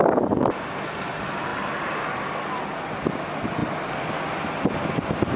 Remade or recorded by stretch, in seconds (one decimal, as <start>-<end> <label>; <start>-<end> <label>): 0.0-5.4 recorded